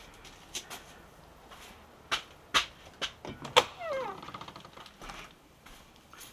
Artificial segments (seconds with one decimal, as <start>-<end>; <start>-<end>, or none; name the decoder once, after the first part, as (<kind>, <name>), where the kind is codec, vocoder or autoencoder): none